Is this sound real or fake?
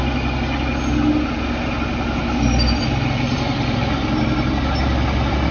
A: real